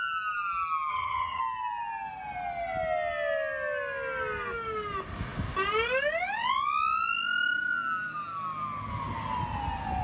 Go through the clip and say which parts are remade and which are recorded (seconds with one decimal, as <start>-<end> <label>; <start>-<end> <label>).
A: 0.0-0.9 recorded; 0.9-1.4 remade; 1.4-10.0 recorded